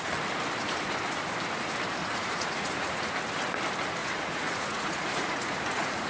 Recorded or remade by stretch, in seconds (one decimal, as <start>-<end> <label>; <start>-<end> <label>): 0.0-2.0 recorded; 2.0-3.2 remade; 3.2-4.0 recorded; 4.0-6.1 remade